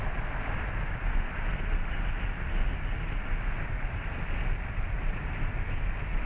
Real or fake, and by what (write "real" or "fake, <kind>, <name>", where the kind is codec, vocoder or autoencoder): real